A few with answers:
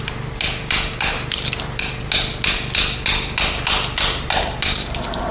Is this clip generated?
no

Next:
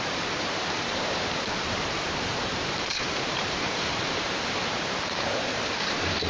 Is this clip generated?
yes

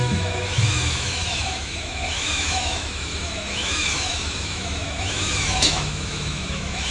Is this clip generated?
yes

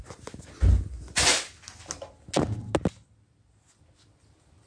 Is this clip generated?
no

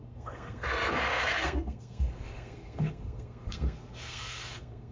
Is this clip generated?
yes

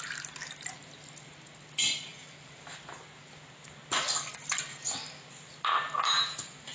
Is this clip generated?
no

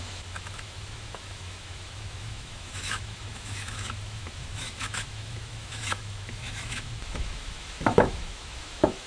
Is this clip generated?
yes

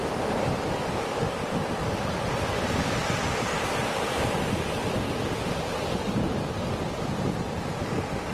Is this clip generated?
no